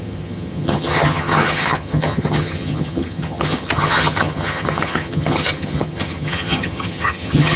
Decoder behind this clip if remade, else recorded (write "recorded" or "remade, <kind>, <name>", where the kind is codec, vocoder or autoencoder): remade, vocoder, HiFi-GAN